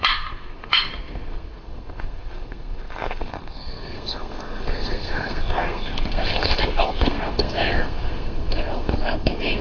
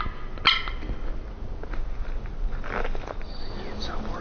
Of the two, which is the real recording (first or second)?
second